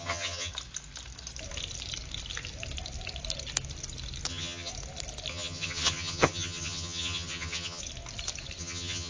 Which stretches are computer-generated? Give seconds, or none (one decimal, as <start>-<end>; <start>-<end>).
0.0-0.5; 4.3-4.7; 5.3-7.8; 8.6-9.1